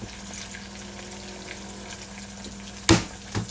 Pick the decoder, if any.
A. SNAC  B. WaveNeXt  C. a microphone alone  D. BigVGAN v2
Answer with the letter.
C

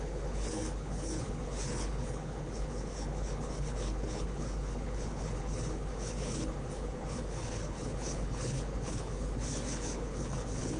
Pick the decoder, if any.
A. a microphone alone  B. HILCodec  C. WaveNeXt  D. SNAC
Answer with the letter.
B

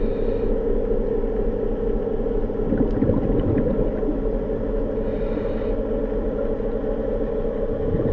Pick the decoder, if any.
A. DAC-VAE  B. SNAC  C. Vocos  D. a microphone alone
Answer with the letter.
D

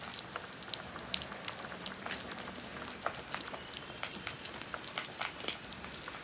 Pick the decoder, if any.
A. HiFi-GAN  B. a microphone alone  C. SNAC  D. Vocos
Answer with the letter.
B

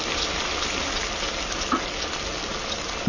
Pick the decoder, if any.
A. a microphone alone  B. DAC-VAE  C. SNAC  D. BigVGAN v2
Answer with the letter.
A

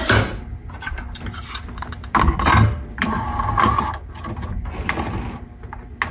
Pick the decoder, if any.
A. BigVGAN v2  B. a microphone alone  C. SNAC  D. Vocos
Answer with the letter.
B